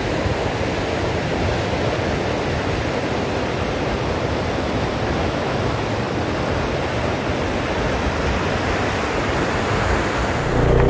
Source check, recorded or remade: recorded